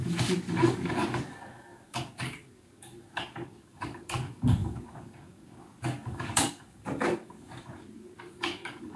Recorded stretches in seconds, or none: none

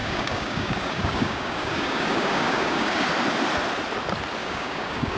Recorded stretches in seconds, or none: 3.1-4.4

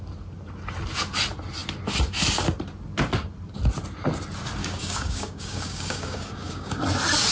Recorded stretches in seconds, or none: 0.0-4.6; 6.8-7.3